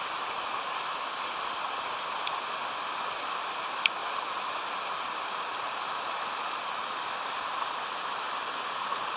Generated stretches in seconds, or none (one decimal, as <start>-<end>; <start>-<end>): none